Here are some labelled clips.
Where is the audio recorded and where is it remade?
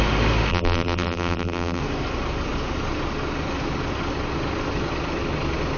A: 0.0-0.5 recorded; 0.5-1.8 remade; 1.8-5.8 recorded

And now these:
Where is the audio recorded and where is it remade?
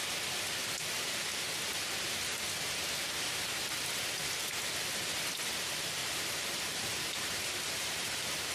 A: 0.0-6.0 recorded; 6.0-8.5 remade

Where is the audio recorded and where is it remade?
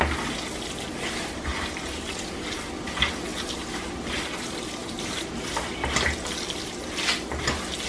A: 0.0-1.5 recorded; 1.5-2.1 remade; 2.1-3.3 recorded; 3.3-4.1 remade; 4.1-4.8 recorded; 4.8-5.3 remade; 5.3-7.9 recorded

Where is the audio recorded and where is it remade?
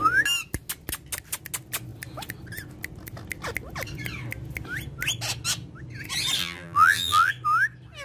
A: 0.0-6.4 recorded; 6.4-7.3 remade; 7.3-8.0 recorded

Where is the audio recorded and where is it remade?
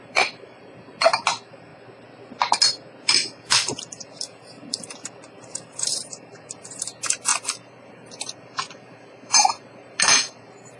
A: 0.0-1.7 remade; 1.7-3.0 recorded; 3.0-10.8 remade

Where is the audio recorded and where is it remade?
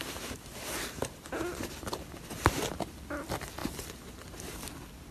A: 0.0-5.1 recorded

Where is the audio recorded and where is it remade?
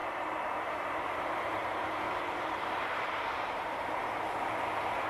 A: 0.0-3.1 remade; 3.1-5.1 recorded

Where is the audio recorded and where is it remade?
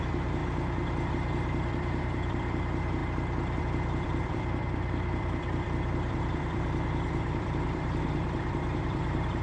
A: 0.0-0.4 remade; 0.4-1.1 recorded; 1.1-3.0 remade; 3.0-3.6 recorded; 3.6-9.4 remade